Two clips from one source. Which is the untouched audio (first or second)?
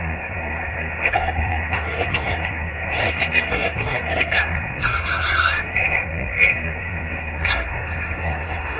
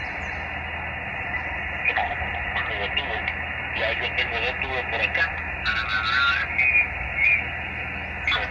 second